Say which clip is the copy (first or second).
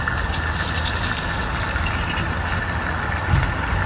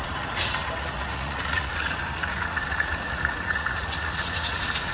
second